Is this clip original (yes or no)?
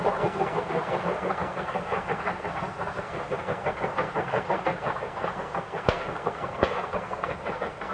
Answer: no